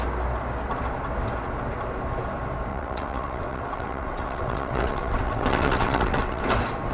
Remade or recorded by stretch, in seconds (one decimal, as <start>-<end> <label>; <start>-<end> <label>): 0.0-2.7 recorded; 2.7-6.4 remade; 6.4-6.9 recorded